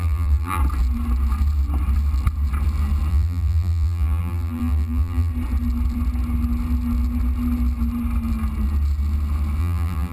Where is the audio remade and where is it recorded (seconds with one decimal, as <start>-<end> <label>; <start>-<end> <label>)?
0.0-0.6 remade; 0.6-3.1 recorded; 3.1-5.3 remade; 5.3-9.6 recorded; 9.6-10.1 remade